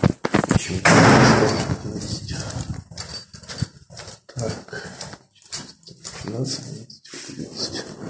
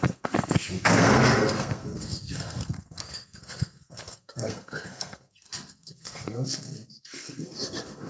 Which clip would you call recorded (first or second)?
first